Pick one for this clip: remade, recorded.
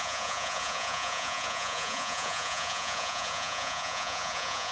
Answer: remade